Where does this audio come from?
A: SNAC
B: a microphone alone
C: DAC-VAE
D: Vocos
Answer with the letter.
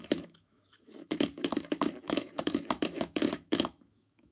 C